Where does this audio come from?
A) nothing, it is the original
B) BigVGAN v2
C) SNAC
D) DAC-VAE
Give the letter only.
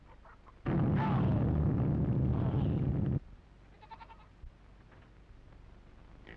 A